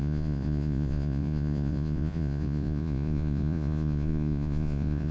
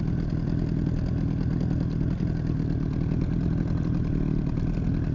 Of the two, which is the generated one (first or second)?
first